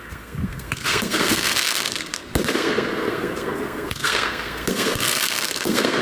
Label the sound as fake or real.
fake